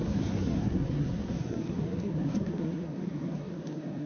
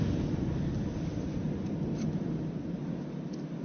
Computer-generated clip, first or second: first